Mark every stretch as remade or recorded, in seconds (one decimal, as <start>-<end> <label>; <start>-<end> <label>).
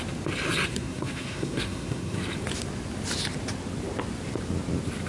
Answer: 0.0-0.7 recorded; 0.7-2.2 remade; 2.2-5.1 recorded